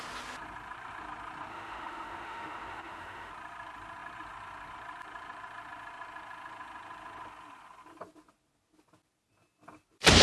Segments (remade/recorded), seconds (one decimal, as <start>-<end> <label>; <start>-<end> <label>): 0.0-1.5 recorded; 1.5-3.3 remade; 3.3-10.2 recorded